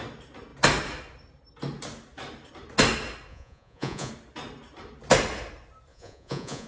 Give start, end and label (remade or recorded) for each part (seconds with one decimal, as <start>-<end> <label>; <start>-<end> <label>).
0.0-3.3 recorded; 3.3-4.1 remade; 4.1-5.9 recorded; 5.9-6.7 remade